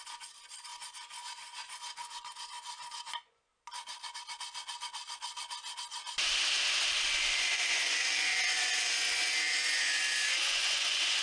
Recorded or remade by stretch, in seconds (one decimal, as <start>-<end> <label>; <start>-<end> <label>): 0.0-3.5 remade; 3.5-7.4 recorded; 7.4-11.2 remade